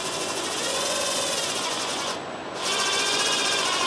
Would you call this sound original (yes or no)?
no